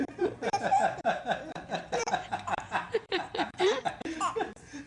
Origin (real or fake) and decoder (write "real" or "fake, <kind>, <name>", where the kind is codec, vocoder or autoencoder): fake, vocoder, BigVGAN v2